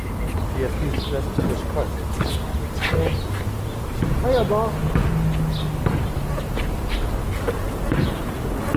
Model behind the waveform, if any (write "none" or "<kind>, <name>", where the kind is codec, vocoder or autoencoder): none